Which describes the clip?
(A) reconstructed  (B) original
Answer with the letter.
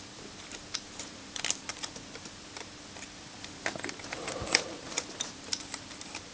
A